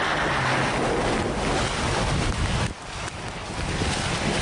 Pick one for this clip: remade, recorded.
recorded